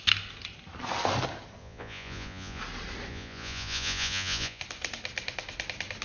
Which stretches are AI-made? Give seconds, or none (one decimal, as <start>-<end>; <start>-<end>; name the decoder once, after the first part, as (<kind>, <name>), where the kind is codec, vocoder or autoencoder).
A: 1.6-2.6 (vocoder, Vocos); 3.1-4.6